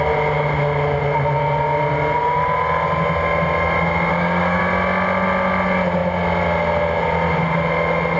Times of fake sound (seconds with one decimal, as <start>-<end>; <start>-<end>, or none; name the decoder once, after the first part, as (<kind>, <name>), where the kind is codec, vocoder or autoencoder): 4.1-4.6 (codec, DAC)